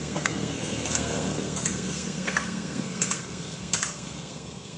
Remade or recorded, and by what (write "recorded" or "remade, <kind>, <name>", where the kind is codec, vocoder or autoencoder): remade, codec, SNAC